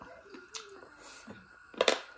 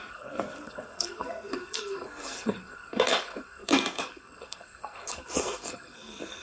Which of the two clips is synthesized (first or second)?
second